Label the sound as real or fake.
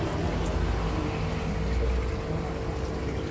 real